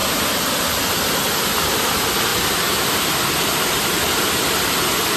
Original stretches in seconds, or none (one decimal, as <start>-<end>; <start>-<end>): 0.0-5.2